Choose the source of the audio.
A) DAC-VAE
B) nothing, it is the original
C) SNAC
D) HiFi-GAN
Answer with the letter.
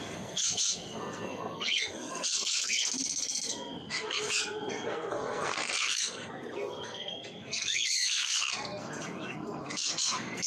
C